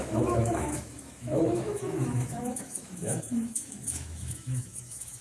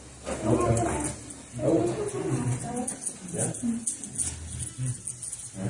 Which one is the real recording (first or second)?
second